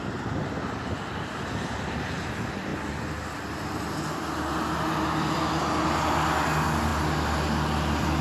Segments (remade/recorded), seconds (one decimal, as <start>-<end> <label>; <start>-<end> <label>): 0.0-8.2 recorded